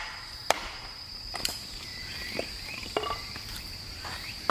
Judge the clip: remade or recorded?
recorded